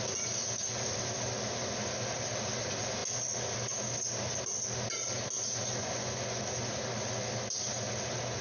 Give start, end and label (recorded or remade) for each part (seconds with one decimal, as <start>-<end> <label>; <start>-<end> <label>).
0.0-5.8 recorded; 5.8-6.4 remade; 6.4-8.4 recorded